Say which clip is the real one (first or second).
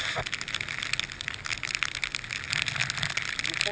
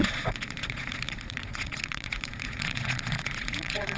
first